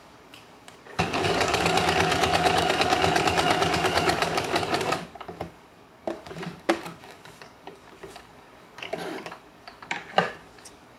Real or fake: fake